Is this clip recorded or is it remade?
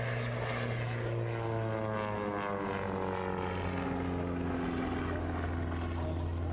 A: recorded